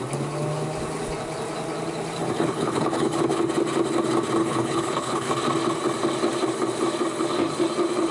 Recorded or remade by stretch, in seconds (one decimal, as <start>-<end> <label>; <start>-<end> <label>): 0.0-2.2 recorded; 2.2-3.5 remade; 3.5-4.4 recorded; 4.4-5.3 remade; 5.3-8.1 recorded